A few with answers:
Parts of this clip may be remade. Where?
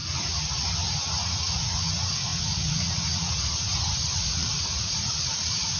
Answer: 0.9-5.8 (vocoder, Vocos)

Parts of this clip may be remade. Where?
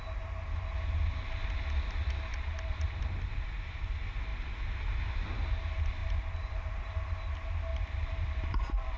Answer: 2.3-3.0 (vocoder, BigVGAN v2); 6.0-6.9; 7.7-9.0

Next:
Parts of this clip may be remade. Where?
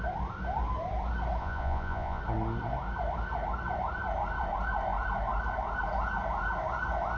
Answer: 1.4-2.2 (vocoder, Vocos)